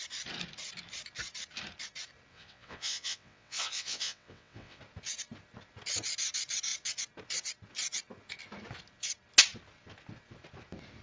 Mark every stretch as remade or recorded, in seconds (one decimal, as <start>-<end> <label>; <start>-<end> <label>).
0.0-2.3 recorded; 2.3-4.8 remade; 4.8-11.0 recorded